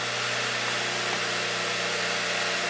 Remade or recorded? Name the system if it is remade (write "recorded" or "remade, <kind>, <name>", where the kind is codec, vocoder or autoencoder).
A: recorded